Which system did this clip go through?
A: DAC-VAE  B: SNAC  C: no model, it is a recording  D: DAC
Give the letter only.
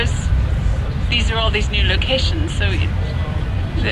C